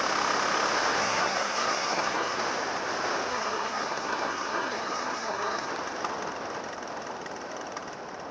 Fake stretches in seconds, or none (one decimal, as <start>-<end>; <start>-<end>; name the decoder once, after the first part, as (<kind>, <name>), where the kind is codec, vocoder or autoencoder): 1.0-2.4 (codec, SNAC); 3.3-5.7